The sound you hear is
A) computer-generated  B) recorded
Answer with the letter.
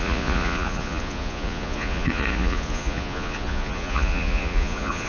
A